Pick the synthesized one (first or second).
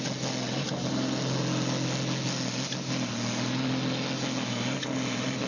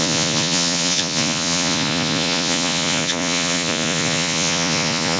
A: second